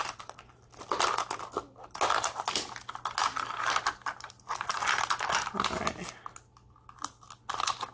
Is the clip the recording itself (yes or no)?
yes